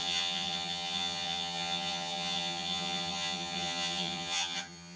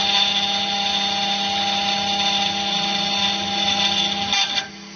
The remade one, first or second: first